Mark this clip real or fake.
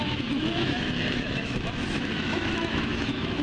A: fake